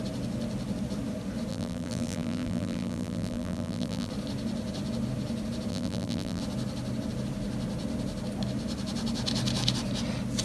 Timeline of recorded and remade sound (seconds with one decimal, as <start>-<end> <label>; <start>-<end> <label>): 0.0-1.5 recorded; 1.5-4.1 remade; 4.1-5.7 recorded; 5.7-6.4 remade; 6.4-10.4 recorded